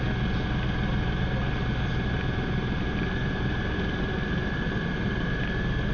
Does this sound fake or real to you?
real